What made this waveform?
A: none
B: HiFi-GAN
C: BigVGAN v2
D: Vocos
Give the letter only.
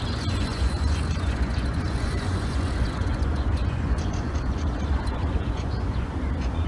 D